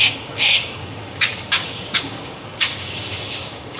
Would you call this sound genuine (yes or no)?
no